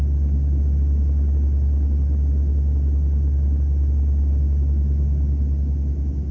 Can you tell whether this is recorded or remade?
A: recorded